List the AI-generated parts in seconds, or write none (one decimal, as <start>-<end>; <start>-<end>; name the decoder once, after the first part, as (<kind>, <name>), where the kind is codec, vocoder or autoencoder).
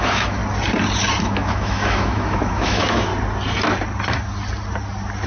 0.0-0.4 (autoencoder, DAC-VAE); 1.2-3.1